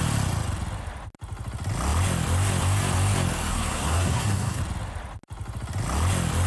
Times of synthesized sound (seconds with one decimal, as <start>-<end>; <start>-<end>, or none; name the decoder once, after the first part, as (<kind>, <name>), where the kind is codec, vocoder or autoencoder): 3.5-4.6 (codec, SNAC)